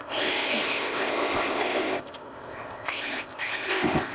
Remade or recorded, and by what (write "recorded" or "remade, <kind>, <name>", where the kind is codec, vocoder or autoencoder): remade, codec, ZipCodec